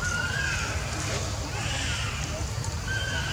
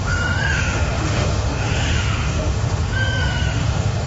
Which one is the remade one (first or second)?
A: second